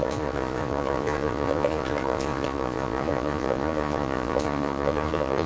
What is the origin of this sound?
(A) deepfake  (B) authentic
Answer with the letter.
A